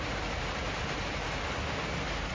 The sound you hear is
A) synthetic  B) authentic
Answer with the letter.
A